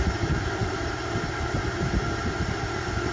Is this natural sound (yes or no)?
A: no